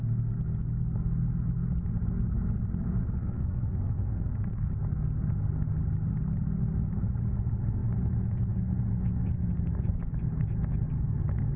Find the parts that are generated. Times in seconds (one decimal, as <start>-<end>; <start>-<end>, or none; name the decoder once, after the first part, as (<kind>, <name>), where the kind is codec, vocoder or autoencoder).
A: 3.2-4.7 (codec, SNAC)